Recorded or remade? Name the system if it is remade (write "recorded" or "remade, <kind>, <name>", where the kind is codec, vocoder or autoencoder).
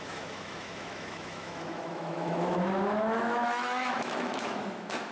remade, autoencoder, DAC-VAE